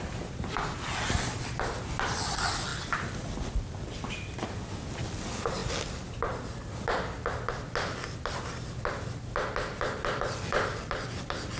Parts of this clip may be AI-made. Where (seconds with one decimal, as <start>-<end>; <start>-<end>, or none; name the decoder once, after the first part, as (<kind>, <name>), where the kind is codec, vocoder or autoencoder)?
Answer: none

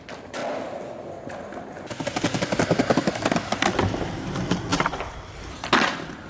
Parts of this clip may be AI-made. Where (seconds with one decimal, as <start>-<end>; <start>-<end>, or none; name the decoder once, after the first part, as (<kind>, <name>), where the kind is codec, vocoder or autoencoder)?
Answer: none

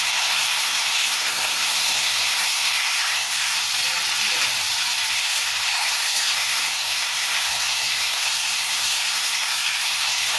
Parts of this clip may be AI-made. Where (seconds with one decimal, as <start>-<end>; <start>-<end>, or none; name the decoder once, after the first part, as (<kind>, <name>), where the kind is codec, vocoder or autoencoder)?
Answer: 0.0-3.6 (codec, SNAC); 5.1-10.4

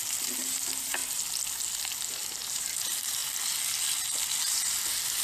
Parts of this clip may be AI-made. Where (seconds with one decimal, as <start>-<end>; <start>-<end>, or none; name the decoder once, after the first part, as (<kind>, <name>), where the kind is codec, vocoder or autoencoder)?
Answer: 0.0-1.0 (vocoder, BigVGAN v2); 2.5-3.2

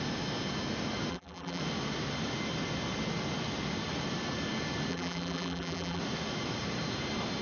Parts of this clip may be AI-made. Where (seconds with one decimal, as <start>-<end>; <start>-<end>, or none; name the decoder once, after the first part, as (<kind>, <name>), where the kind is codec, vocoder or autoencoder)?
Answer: 1.1-1.6 (vocoder, BigVGAN v2); 4.9-6.0

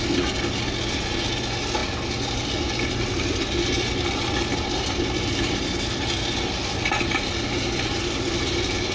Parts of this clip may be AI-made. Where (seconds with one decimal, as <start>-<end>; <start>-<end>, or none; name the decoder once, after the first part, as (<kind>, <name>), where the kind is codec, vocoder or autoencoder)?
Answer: none

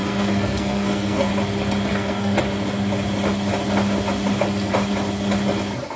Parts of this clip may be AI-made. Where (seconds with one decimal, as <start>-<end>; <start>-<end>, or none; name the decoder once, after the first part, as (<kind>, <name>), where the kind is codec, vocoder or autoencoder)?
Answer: 0.0-1.3 (codec, SNAC); 1.9-2.4